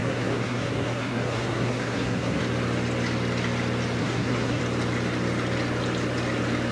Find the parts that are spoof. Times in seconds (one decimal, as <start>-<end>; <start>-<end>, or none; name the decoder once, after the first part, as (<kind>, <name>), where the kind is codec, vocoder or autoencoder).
0.0-2.4 (codec, SNAC); 4.0-4.6

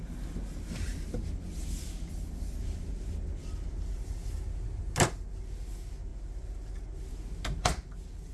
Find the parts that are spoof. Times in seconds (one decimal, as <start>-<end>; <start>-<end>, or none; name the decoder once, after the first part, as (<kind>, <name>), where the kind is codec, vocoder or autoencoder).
none

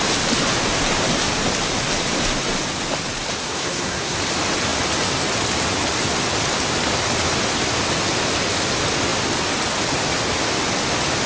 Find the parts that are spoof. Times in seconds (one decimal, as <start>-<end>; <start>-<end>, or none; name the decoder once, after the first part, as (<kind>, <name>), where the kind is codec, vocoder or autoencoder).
3.4-4.2 (codec, SNAC)